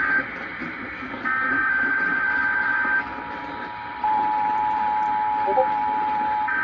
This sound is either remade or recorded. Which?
remade